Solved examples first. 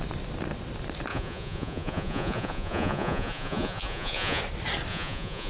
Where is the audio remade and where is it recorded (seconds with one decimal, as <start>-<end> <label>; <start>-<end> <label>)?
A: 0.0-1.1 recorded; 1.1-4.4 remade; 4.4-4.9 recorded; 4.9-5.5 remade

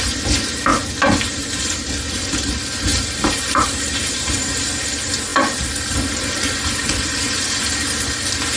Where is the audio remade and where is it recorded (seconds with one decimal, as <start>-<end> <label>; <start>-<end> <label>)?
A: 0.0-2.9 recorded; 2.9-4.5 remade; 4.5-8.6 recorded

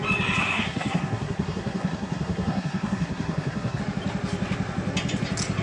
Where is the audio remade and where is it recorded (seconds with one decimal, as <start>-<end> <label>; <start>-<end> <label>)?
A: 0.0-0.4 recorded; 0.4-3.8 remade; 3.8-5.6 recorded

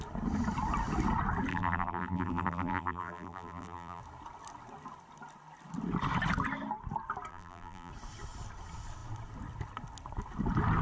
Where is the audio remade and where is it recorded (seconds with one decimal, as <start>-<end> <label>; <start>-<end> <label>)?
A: 0.0-1.5 recorded; 1.5-4.0 remade; 4.0-7.3 recorded; 7.3-7.9 remade; 7.9-10.8 recorded

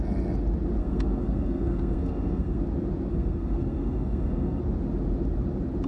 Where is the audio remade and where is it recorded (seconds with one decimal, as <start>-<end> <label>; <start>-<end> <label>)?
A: 0.0-0.8 recorded; 0.8-2.6 remade; 2.6-3.1 recorded; 3.1-4.6 remade; 4.6-5.9 recorded